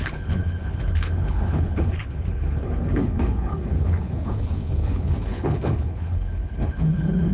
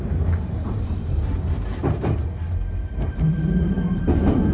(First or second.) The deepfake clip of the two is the first